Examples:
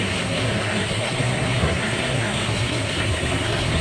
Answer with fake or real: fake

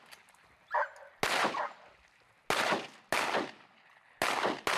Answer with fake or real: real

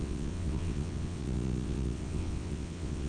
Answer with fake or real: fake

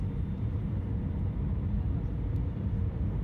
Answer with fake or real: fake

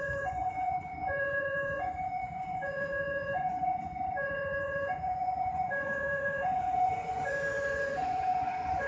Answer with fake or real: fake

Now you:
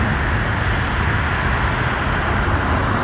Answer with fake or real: real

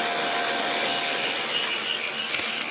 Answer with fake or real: real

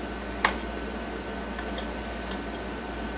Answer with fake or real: real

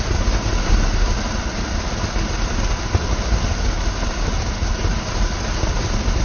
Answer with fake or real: real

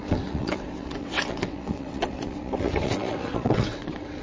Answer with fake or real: fake